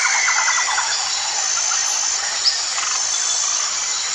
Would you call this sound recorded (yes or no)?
yes